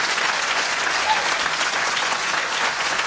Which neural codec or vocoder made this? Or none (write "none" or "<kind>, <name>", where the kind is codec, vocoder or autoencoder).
vocoder, Vocos